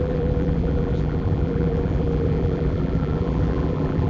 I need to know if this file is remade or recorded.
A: remade